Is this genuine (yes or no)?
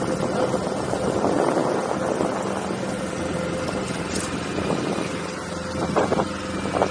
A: yes